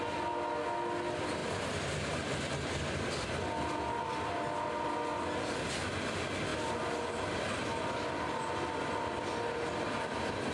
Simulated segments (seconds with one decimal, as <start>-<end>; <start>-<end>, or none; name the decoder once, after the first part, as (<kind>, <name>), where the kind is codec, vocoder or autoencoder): none